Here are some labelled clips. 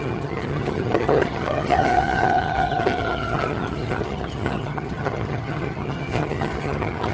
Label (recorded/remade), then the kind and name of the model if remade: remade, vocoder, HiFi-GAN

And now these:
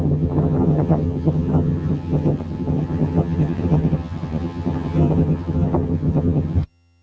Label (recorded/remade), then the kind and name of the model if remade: remade, vocoder, HiFi-GAN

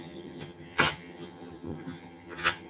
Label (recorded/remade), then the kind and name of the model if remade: remade, vocoder, HiFi-GAN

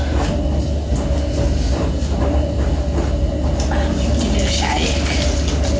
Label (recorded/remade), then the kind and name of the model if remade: recorded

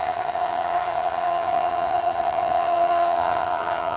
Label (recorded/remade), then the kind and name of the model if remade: remade, vocoder, HiFi-GAN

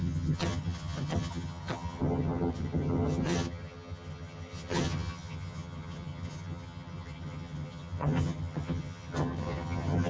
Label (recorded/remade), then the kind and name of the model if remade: remade, vocoder, HiFi-GAN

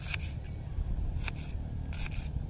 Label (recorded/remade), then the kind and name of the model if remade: recorded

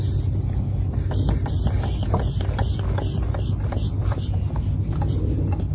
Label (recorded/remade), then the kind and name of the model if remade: recorded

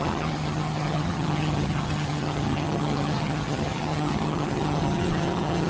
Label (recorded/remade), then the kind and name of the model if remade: remade, vocoder, HiFi-GAN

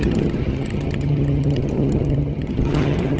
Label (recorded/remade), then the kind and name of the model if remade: remade, vocoder, HiFi-GAN